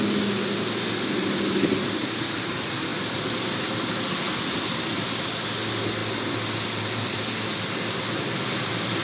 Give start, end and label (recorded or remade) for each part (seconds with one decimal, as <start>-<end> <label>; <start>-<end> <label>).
0.0-9.0 recorded